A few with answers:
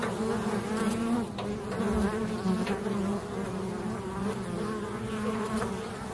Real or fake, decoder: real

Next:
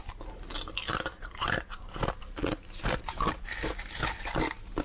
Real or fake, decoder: real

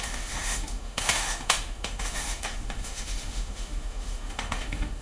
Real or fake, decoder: fake, autoencoder, DAC-VAE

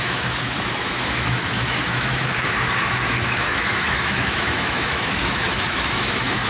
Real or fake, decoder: fake, autoencoder, DAC-VAE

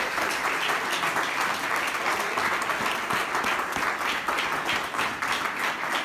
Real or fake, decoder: real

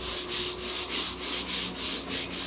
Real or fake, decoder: real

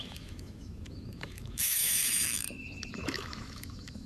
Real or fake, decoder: fake, autoencoder, DAC-VAE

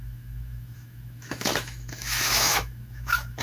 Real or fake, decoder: fake, autoencoder, DAC-VAE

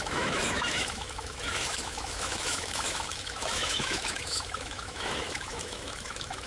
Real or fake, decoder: fake, autoencoder, DAC-VAE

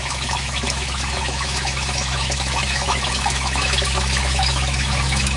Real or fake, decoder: fake, autoencoder, DAC-VAE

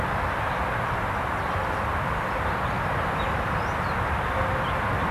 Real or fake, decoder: real